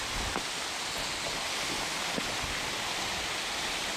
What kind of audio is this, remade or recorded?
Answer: recorded